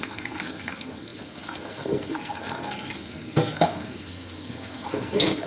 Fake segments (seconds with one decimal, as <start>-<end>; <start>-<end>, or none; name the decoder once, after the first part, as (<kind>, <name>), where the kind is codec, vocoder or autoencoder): 0.0-5.5 (codec, SNAC)